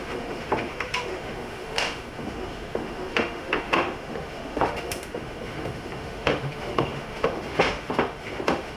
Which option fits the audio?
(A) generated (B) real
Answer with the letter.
A